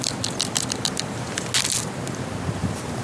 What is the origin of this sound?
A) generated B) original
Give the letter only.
B